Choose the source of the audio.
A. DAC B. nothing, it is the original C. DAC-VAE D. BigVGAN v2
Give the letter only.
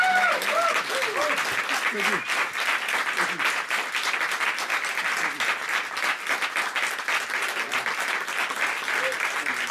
B